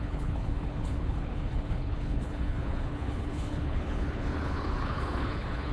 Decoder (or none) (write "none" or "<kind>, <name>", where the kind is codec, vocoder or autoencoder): codec, HILCodec